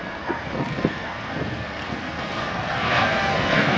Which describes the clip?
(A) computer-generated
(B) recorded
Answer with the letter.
A